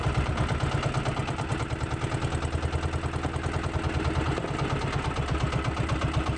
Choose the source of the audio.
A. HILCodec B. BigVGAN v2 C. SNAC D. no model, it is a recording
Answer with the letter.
D